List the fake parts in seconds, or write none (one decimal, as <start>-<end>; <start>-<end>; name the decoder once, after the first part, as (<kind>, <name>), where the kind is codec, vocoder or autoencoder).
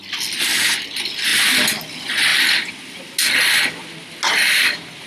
none